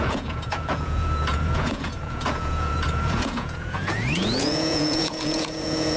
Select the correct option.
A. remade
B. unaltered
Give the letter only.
A